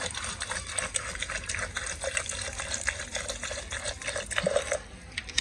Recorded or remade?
recorded